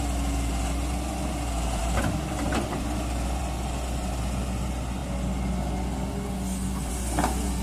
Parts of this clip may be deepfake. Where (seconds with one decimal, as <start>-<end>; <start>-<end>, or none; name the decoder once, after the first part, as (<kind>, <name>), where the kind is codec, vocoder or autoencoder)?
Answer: none